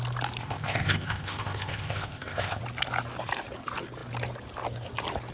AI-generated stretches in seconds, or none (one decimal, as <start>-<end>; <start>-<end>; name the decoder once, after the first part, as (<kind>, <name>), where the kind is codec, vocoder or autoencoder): 0.4-2.6 (codec, ZipCodec)